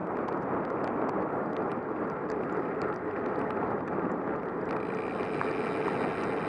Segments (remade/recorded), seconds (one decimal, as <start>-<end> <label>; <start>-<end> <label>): 0.0-6.5 recorded